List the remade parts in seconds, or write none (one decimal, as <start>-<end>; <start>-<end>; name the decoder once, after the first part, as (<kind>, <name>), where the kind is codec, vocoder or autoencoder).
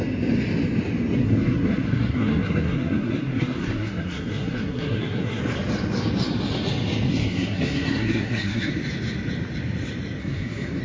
1.2-5.4 (codec, SNAC); 7.1-8.7; 10.2-10.8